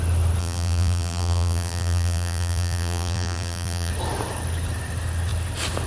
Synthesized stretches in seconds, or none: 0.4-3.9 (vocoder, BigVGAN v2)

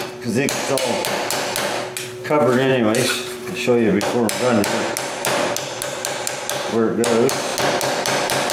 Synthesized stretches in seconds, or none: none

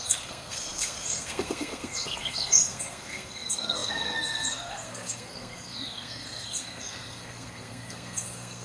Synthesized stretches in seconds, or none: 0.0-8.6 (codec, SNAC)